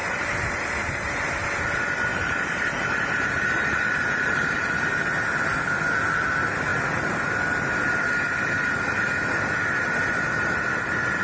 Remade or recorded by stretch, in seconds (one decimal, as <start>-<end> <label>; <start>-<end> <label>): 0.0-1.5 remade; 1.5-2.1 recorded; 2.1-4.8 remade; 4.8-11.2 recorded

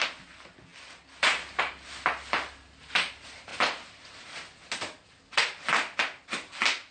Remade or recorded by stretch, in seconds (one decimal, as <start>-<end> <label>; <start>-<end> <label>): 0.0-0.7 recorded; 0.7-3.1 remade; 3.1-3.5 recorded; 3.5-4.2 remade; 4.2-6.9 recorded

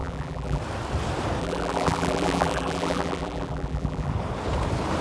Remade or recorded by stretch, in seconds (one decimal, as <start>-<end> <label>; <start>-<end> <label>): 0.0-0.6 remade; 0.6-1.4 recorded; 1.4-4.1 remade; 4.1-5.0 recorded

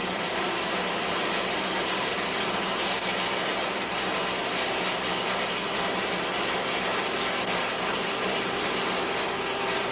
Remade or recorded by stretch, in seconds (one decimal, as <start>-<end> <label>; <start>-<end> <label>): 0.0-2.3 remade; 2.3-7.9 recorded; 7.9-8.9 remade; 8.9-9.9 recorded

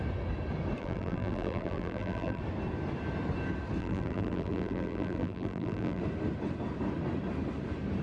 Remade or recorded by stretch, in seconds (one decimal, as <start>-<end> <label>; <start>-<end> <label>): 0.0-0.8 recorded; 0.8-2.4 remade; 2.4-3.8 recorded; 3.8-6.0 remade; 6.0-8.0 recorded